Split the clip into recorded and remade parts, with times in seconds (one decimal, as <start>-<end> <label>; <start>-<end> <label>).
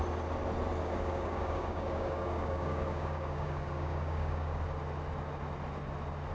0.0-0.8 recorded; 0.8-4.6 remade; 4.6-6.3 recorded